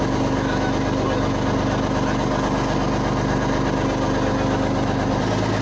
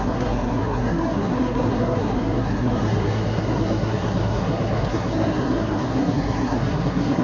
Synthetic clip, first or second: second